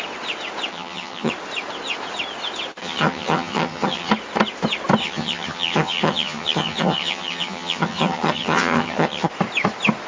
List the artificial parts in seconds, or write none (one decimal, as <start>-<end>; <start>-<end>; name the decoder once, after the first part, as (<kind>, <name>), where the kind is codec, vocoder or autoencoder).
0.7-1.3 (vocoder, HiFi-GAN); 2.8-4.1; 5.0-9.3